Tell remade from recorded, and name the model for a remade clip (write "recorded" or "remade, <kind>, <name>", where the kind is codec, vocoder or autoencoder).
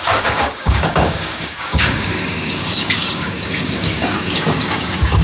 remade, codec, DAC